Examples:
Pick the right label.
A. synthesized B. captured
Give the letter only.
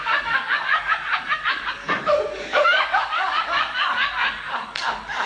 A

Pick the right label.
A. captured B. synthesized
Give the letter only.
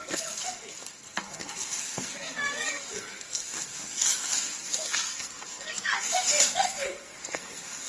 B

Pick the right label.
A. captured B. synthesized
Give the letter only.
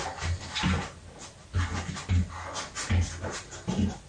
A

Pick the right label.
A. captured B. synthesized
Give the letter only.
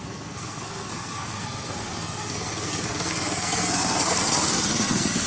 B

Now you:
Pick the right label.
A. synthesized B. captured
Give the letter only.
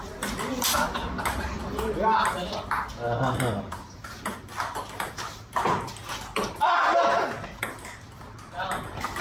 B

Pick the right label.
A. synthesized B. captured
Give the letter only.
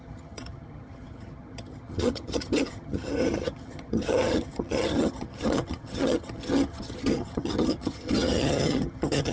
A